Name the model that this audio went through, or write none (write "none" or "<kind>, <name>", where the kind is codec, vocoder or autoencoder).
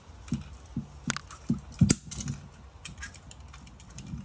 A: none